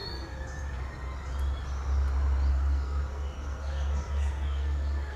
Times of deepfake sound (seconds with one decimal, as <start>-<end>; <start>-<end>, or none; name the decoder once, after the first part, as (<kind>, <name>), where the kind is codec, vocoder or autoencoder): 2.5-5.2 (codec, SNAC)